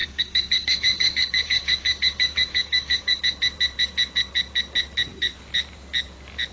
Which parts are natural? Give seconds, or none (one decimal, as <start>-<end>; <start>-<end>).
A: 3.2-6.5